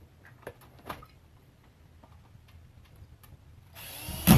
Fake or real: fake